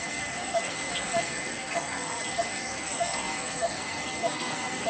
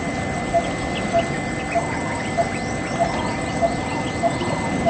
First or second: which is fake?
first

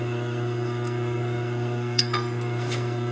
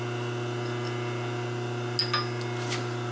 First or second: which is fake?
first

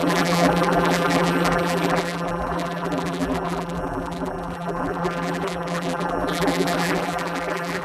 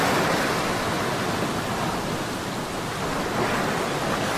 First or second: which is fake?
first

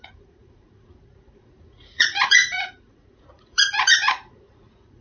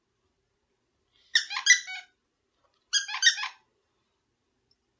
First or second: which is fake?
first